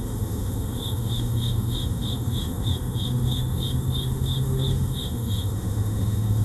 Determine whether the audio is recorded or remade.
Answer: remade